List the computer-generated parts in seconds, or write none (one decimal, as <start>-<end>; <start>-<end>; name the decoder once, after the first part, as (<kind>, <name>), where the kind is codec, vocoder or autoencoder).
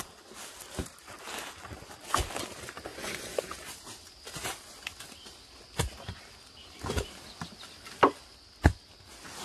2.9-3.4 (vocoder, Vocos)